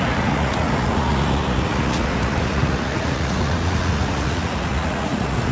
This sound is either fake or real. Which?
fake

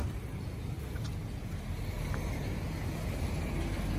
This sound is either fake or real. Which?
real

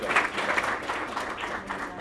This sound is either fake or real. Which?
real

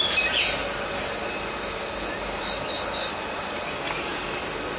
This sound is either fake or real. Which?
real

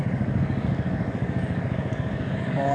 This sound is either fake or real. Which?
fake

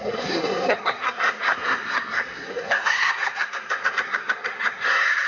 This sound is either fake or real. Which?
fake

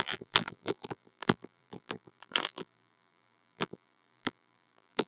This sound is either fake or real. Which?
fake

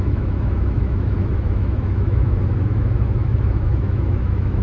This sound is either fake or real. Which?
fake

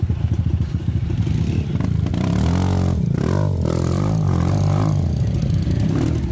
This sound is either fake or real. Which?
real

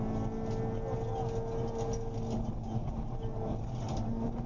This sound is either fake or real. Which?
real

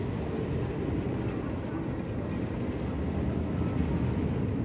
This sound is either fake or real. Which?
real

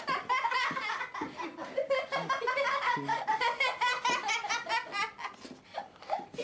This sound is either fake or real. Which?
real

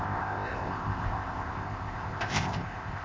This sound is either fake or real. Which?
fake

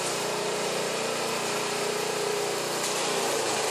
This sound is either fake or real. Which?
fake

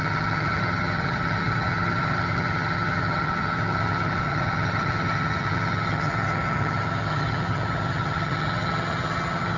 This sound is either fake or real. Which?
fake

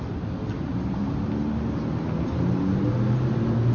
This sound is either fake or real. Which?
real